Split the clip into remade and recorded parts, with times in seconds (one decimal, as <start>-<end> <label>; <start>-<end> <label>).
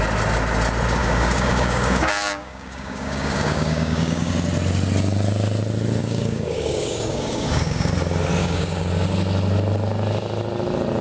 0.0-1.0 recorded; 1.0-4.3 remade; 4.3-6.0 recorded; 6.0-7.9 remade; 7.9-8.4 recorded; 8.4-8.9 remade; 8.9-11.0 recorded